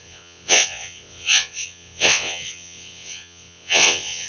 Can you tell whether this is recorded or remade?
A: remade